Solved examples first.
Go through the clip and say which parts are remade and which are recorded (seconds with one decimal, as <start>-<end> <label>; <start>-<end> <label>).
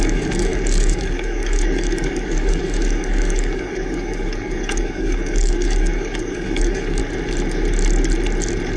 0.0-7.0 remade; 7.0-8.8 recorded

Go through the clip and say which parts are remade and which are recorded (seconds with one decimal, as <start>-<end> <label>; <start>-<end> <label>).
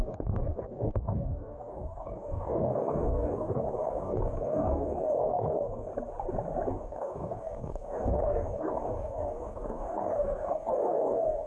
0.0-5.9 remade; 5.9-6.7 recorded; 6.7-11.5 remade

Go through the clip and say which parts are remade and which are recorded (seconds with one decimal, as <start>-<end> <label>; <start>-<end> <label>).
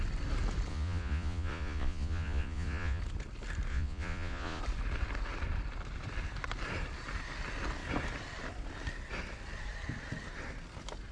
0.0-0.7 recorded; 0.7-3.0 remade; 3.0-3.7 recorded; 3.7-4.6 remade; 4.6-11.1 recorded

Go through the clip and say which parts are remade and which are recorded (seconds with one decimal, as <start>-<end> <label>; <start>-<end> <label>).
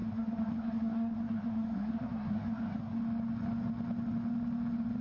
0.0-3.0 remade; 3.0-5.0 recorded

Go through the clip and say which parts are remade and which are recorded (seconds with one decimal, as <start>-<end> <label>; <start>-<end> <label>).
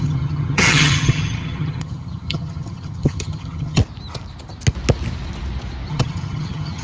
0.0-3.8 remade; 3.8-5.9 recorded; 5.9-6.8 remade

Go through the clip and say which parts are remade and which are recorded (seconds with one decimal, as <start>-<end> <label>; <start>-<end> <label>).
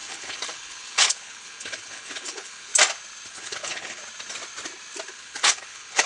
0.0-2.7 remade; 2.7-3.3 recorded; 3.3-4.0 remade; 4.0-5.1 recorded; 5.1-6.1 remade